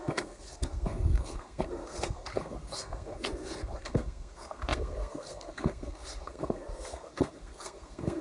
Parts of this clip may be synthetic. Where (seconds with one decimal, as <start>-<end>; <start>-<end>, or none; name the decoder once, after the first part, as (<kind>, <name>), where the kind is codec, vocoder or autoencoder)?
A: 0.0-8.2 (codec, SNAC)